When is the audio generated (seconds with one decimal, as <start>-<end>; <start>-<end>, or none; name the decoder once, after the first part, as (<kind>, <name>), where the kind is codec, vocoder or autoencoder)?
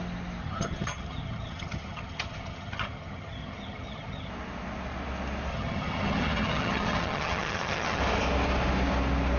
0.4-4.3 (vocoder, HiFi-GAN); 5.5-8.0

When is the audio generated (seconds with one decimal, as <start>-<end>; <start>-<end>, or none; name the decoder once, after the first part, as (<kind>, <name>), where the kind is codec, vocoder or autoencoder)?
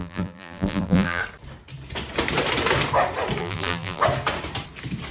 0.0-1.2 (vocoder, BigVGAN v2); 3.4-4.0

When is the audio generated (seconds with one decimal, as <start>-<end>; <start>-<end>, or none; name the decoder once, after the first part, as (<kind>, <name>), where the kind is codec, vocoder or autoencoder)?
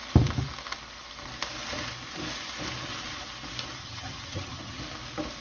3.8-4.8 (vocoder, HiFi-GAN)